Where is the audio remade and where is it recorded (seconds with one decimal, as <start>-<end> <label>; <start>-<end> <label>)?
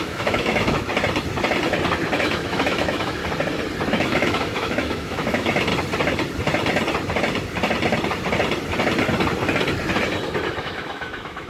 0.0-0.9 remade; 0.9-2.2 recorded; 2.2-3.2 remade; 3.2-3.9 recorded; 3.9-5.7 remade; 5.7-10.6 recorded; 10.6-11.5 remade